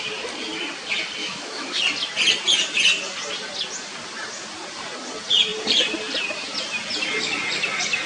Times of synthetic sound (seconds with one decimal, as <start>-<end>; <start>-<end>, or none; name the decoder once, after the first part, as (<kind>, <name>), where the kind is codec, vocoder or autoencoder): 1.2-1.8 (autoencoder, DAC-VAE)